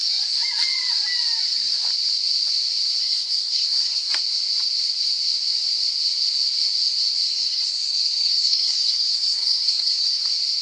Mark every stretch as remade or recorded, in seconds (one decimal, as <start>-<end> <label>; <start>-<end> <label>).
0.0-3.0 recorded; 3.0-4.1 remade; 4.1-7.3 recorded; 7.3-10.2 remade; 10.2-10.6 recorded